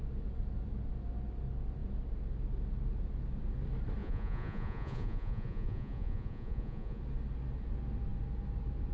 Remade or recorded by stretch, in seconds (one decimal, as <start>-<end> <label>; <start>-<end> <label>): 0.0-4.0 recorded; 4.0-7.0 remade; 7.0-8.9 recorded